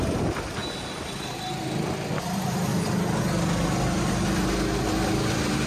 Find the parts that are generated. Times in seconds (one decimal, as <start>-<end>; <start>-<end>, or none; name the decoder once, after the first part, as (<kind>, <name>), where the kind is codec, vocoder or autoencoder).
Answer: 0.0-2.7 (vocoder, BigVGAN v2)